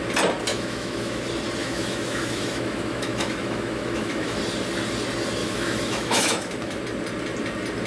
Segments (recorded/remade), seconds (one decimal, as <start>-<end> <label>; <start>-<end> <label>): 0.0-0.5 recorded; 0.5-1.2 remade; 1.2-1.6 recorded; 1.6-4.4 remade; 4.4-5.4 recorded; 5.4-6.8 remade; 6.8-7.9 recorded